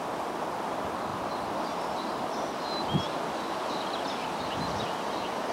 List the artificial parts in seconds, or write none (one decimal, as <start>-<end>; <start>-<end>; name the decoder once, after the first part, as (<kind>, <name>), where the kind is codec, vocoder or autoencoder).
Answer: none